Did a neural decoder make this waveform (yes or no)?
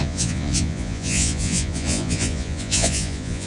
yes